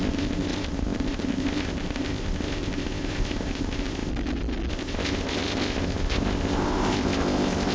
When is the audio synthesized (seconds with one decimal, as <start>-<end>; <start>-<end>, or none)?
0.0-4.1; 4.7-7.7